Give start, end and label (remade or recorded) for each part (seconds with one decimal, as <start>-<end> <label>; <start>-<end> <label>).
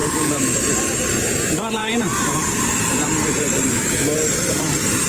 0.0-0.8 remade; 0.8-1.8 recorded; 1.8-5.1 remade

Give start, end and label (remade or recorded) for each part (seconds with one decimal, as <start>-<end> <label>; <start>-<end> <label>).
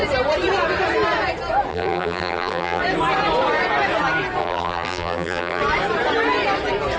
0.0-1.7 recorded; 1.7-2.8 remade; 2.8-4.4 recorded; 4.4-5.6 remade; 5.6-7.0 recorded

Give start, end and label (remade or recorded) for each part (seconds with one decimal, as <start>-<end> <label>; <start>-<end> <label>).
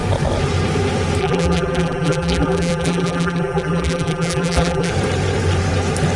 0.0-1.2 recorded; 1.2-4.9 remade; 4.9-6.2 recorded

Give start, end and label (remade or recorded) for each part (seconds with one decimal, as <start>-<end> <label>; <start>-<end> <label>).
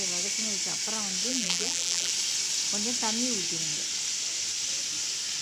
0.0-1.3 recorded; 1.3-2.1 remade; 2.1-5.4 recorded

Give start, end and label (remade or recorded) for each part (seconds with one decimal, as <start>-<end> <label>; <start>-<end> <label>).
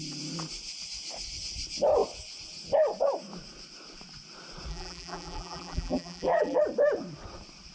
0.0-4.7 recorded; 4.7-6.6 remade; 6.6-7.7 recorded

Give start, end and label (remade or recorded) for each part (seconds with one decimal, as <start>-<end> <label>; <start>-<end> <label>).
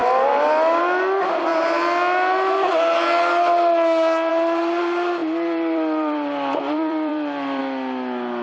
0.0-5.2 recorded; 5.2-7.6 remade; 7.6-8.4 recorded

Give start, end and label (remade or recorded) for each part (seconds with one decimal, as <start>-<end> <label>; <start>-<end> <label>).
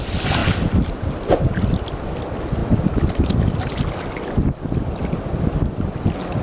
0.0-6.4 recorded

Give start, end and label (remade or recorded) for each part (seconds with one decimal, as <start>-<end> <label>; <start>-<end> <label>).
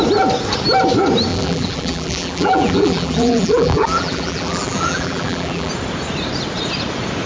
0.0-1.3 recorded; 1.3-5.7 remade; 5.7-7.3 recorded